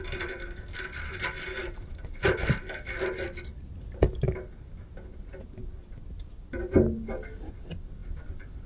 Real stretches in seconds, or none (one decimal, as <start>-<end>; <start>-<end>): 0.0-8.7

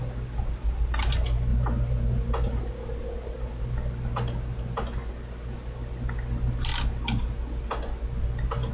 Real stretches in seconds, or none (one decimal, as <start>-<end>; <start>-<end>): 0.0-8.7

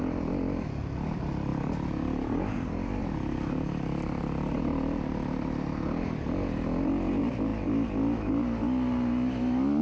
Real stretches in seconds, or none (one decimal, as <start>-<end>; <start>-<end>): 0.0-9.8

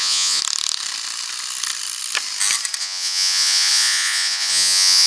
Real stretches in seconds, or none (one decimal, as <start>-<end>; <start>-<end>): 0.4-2.8

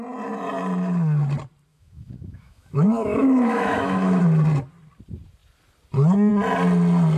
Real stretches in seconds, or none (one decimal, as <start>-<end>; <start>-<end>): 0.0-1.7; 4.2-7.2